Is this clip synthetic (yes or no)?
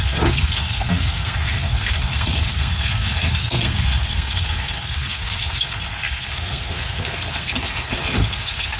yes